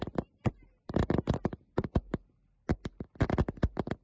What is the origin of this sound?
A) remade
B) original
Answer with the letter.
B